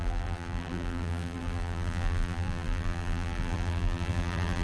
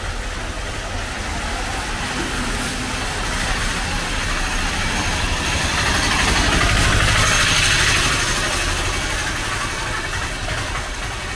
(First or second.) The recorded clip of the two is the second